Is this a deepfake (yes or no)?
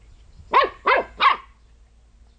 no